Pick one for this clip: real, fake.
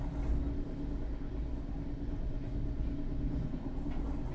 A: real